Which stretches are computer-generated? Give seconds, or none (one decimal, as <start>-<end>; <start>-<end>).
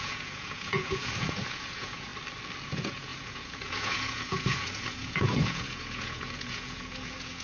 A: 0.0-2.1; 2.6-7.4